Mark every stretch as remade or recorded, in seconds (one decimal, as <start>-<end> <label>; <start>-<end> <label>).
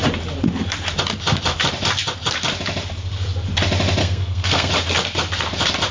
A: 0.0-4.0 recorded; 4.0-4.7 remade; 4.7-5.9 recorded